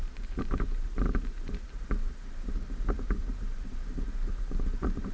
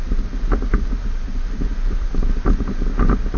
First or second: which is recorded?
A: second